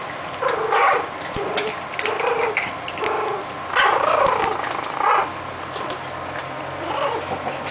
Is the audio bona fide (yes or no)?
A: yes